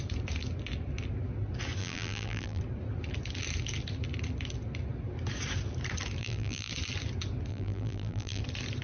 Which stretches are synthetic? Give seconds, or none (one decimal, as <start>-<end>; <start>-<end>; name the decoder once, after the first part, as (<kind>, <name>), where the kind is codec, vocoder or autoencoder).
1.8-2.6 (vocoder, BigVGAN v2); 6.2-6.7; 7.5-8.4